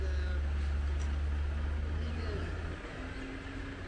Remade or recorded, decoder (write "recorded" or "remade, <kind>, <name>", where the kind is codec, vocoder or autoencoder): recorded